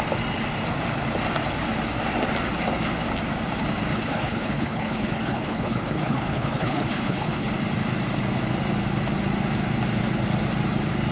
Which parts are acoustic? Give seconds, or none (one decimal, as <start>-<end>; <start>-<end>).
0.0-3.9; 7.5-11.1